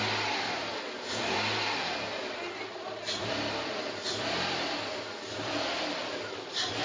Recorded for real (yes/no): yes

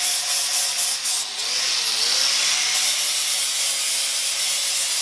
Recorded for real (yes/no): yes